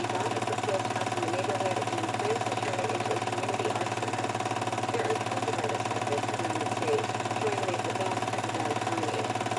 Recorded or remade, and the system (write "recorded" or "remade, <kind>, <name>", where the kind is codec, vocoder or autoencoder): recorded